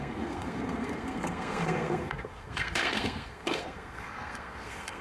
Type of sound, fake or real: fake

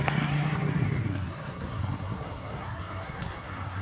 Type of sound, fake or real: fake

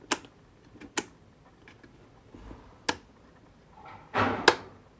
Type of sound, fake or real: real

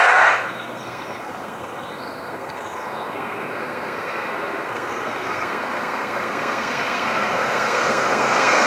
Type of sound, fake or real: fake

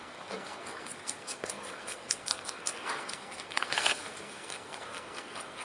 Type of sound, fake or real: fake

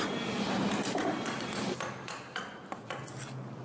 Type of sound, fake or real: real